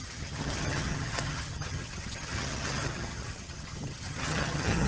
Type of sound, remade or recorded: remade